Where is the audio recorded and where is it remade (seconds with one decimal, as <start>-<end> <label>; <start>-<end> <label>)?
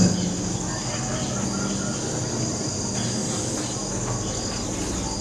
0.0-5.2 recorded